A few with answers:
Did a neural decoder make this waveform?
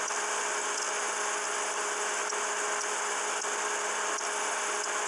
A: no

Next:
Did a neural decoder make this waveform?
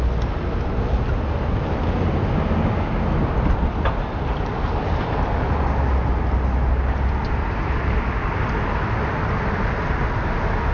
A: no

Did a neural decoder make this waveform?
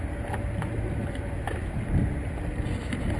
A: no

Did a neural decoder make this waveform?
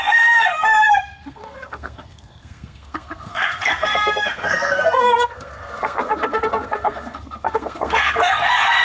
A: yes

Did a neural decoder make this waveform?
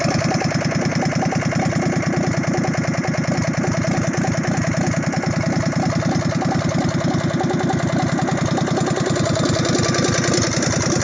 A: no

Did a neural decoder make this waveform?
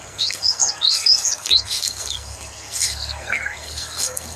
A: yes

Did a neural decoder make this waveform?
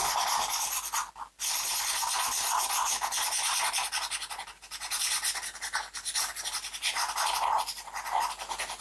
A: no